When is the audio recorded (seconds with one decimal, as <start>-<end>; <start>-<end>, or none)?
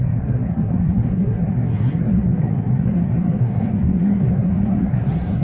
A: none